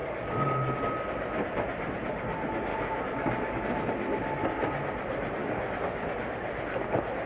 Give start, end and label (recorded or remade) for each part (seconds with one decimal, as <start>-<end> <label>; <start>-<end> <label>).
0.0-0.8 remade; 0.8-2.7 recorded; 2.7-3.6 remade; 3.6-5.4 recorded; 5.4-6.1 remade; 6.1-7.3 recorded